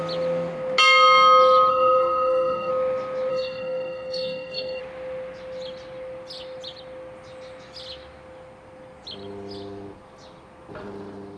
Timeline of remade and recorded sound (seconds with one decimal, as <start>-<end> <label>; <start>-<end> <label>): 0.0-1.7 recorded; 1.7-2.7 remade; 2.7-3.3 recorded; 3.3-4.8 remade; 4.8-11.4 recorded